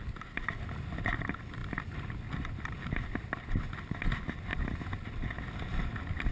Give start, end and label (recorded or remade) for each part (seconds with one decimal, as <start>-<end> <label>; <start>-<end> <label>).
0.0-6.3 recorded